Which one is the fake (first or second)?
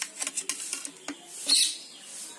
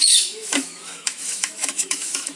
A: second